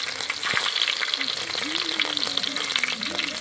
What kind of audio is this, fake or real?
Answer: real